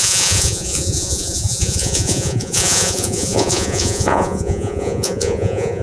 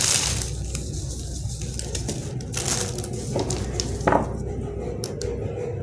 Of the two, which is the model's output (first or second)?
first